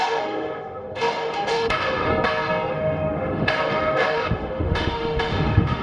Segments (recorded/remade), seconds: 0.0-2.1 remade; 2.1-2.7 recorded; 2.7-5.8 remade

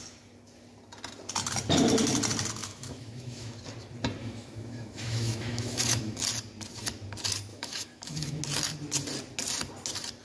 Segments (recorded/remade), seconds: 0.0-2.6 recorded; 2.6-3.6 remade; 3.6-4.2 recorded; 4.2-6.2 remade; 6.2-7.5 recorded; 7.5-8.4 remade; 8.4-10.2 recorded

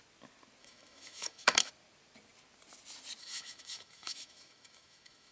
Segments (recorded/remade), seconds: 0.0-0.6 recorded; 0.6-1.7 remade; 1.7-3.2 recorded; 3.2-5.3 remade

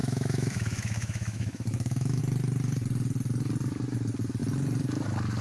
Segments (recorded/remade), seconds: 0.0-2.2 remade; 2.2-5.4 recorded

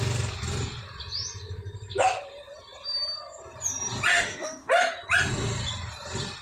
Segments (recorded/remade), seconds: 0.0-4.1 recorded; 4.1-4.7 remade; 4.7-6.4 recorded

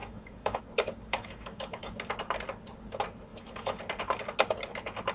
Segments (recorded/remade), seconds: 0.0-0.6 remade; 0.6-1.1 recorded; 1.1-1.9 remade; 1.9-3.3 recorded; 3.3-3.8 remade; 3.8-5.1 recorded